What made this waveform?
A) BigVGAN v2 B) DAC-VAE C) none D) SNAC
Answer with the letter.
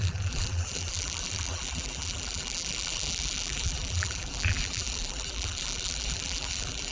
A